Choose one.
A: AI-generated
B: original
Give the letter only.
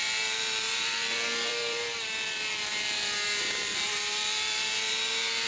A